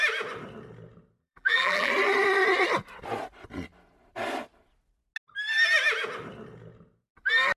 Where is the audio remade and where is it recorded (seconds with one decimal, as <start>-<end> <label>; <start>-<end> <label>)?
0.0-1.2 recorded; 1.2-1.9 remade; 1.9-7.6 recorded